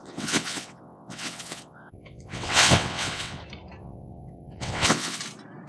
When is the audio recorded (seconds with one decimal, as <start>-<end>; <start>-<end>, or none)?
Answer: 3.4-3.8; 5.2-5.7